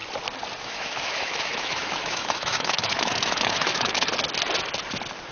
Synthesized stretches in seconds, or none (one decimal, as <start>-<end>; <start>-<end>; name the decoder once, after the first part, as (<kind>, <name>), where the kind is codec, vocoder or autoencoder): 0.6-4.1 (autoencoder, DAC-VAE)